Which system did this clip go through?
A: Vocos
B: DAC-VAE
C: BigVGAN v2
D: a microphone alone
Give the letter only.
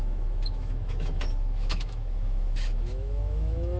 B